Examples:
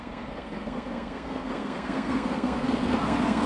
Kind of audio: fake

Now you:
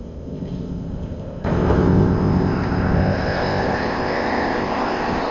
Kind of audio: fake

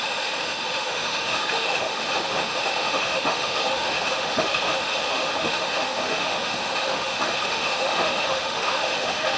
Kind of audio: fake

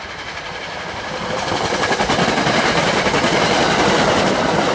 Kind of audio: fake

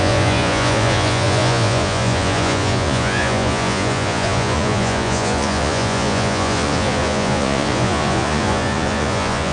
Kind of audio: fake